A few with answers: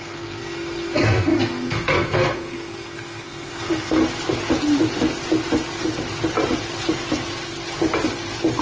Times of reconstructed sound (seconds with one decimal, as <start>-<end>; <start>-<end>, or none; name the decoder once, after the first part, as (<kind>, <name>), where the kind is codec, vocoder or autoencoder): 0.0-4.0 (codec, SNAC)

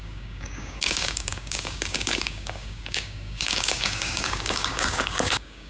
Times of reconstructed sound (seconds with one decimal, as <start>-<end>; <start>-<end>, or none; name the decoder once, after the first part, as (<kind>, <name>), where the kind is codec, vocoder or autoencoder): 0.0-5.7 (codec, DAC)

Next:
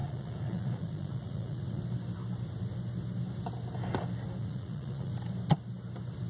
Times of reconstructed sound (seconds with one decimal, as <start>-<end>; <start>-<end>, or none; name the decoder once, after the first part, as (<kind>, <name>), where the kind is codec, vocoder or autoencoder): 0.0-1.8 (vocoder, Vocos); 4.4-5.1

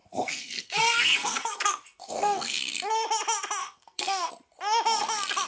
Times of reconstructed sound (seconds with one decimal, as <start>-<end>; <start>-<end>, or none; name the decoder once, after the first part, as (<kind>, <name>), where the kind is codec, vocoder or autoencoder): 0.0-2.6 (codec, SNAC); 3.6-4.3

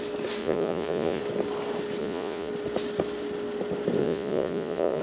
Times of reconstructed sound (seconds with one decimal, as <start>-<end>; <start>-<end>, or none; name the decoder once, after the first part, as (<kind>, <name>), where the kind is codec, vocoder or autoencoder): 0.4-1.2 (vocoder, Vocos); 2.0-2.5; 4.0-5.0